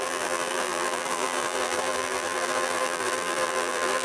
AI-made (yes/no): yes